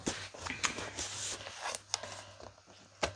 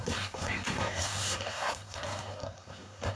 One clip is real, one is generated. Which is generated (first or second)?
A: second